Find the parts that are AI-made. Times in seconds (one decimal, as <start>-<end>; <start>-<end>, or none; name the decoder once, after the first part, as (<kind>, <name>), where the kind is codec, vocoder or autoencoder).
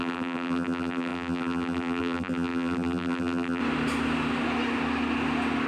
0.0-3.6 (vocoder, BigVGAN v2)